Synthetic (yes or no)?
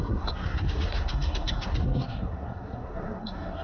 yes